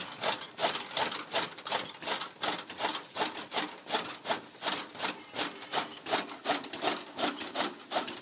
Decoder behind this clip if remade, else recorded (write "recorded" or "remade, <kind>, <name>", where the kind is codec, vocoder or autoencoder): recorded